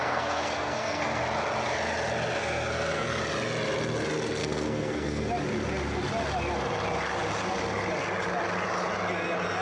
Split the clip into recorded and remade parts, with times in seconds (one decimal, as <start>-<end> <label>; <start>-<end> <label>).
0.0-1.2 remade; 1.2-2.4 recorded; 2.4-3.2 remade; 3.2-4.4 recorded; 4.4-5.3 remade; 5.3-9.6 recorded